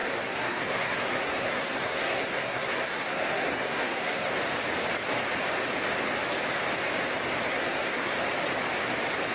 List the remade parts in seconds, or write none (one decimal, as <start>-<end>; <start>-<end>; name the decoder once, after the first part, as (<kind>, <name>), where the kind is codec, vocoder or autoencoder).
0.0-4.3 (codec, SNAC); 7.5-8.1